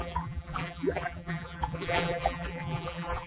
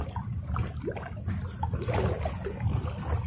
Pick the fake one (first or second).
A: first